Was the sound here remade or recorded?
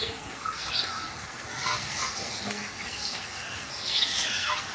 remade